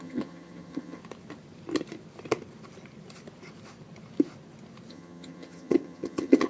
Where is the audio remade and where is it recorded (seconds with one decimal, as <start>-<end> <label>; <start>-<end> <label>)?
0.0-1.0 remade; 1.0-4.9 recorded; 4.9-6.5 remade